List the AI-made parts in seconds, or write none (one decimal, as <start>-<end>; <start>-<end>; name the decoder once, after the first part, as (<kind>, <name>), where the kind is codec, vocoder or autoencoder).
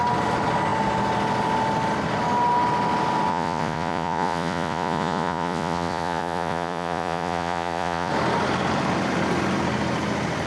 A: 3.3-8.1 (vocoder, Vocos)